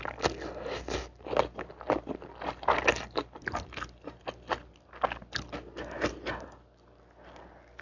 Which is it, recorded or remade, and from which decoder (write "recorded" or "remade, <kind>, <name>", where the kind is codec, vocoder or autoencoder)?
recorded